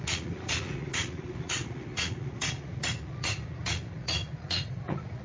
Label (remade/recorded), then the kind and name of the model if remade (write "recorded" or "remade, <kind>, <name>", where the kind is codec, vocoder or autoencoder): remade, vocoder, Vocos